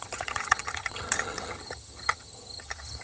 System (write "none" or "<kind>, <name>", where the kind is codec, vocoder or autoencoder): vocoder, HiFi-GAN